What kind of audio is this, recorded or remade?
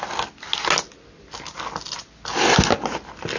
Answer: recorded